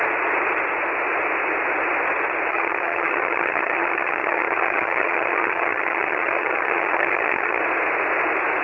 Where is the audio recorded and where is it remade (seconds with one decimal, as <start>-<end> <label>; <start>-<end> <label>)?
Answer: 0.0-2.5 recorded; 2.5-7.6 remade; 7.6-8.6 recorded